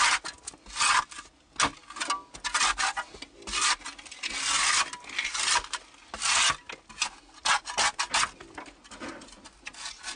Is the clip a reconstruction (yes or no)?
no